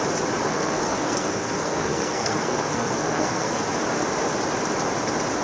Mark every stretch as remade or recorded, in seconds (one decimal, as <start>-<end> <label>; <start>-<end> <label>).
0.0-0.4 recorded; 0.4-3.6 remade; 3.6-5.4 recorded